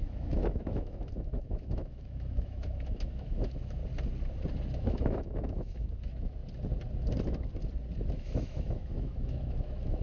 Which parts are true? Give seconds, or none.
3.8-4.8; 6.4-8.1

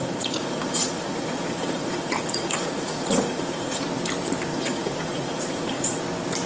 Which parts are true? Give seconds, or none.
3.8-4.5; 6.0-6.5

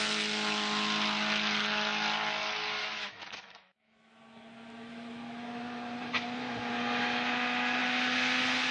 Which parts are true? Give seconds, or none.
0.0-2.8; 4.2-8.7

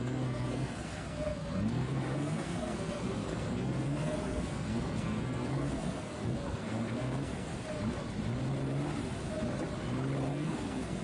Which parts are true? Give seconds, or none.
7.5-10.3